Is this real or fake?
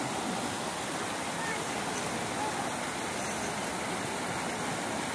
real